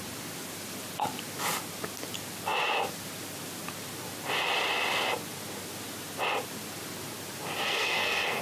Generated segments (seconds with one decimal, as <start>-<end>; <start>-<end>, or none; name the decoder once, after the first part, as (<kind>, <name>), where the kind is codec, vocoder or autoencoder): 7.6-8.4 (codec, SNAC)